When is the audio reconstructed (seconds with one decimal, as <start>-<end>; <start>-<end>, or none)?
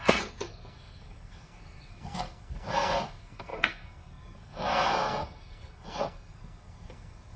0.0-7.4